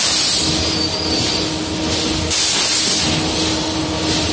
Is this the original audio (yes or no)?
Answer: yes